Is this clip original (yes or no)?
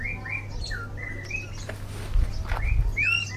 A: yes